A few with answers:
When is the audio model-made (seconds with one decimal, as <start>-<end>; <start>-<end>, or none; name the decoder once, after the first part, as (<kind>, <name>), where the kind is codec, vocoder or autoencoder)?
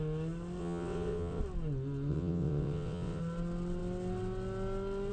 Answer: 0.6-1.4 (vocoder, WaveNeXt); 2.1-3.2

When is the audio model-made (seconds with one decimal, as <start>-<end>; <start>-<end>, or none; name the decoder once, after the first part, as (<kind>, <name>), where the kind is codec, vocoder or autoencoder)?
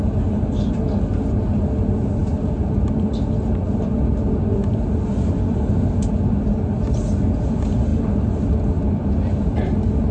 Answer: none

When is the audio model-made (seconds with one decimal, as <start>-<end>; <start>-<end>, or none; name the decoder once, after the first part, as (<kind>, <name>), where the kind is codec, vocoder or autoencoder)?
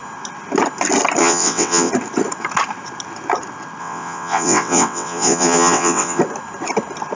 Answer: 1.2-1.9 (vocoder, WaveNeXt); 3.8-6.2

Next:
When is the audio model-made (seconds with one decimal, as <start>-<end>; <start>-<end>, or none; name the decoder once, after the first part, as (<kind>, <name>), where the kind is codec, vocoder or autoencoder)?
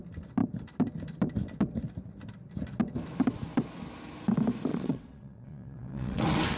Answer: 4.7-6.6 (vocoder, WaveNeXt)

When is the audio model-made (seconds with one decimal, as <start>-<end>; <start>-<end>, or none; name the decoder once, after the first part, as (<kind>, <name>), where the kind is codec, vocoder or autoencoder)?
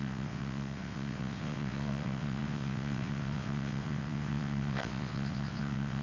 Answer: 0.0-6.0 (vocoder, WaveNeXt)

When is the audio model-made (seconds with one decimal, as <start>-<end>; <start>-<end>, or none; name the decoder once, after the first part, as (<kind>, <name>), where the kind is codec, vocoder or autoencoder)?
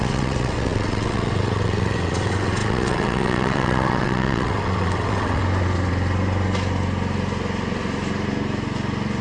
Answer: 0.0-5.4 (vocoder, WaveNeXt)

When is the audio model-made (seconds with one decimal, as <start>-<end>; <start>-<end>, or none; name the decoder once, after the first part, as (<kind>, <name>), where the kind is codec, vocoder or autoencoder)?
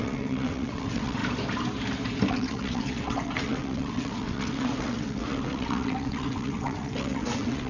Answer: 0.0-1.2 (vocoder, WaveNeXt); 2.3-7.7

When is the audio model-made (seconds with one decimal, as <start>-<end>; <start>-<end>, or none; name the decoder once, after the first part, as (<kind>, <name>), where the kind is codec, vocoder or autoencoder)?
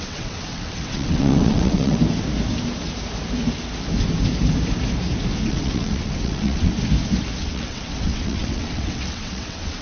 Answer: 0.0-2.0 (vocoder, WaveNeXt); 5.5-6.7; 7.4-9.8